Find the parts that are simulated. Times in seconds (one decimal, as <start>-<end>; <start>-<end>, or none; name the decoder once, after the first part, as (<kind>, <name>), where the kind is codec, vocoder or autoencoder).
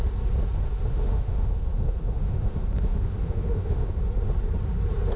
0.9-3.9 (autoencoder, DAC-VAE)